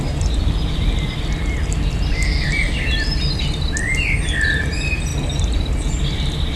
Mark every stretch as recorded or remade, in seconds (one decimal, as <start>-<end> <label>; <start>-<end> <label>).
0.0-6.6 recorded